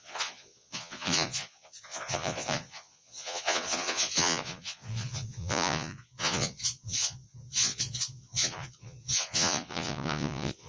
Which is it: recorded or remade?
remade